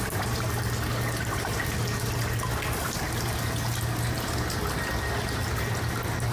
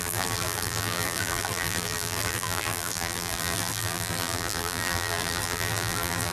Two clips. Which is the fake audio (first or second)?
second